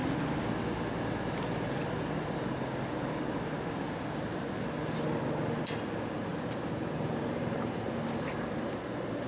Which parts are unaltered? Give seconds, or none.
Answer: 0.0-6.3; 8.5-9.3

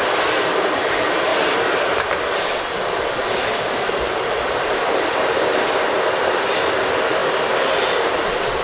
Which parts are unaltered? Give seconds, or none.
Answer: 7.2-7.8

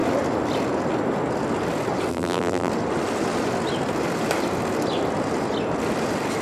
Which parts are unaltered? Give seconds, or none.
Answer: 0.0-2.1; 2.7-6.4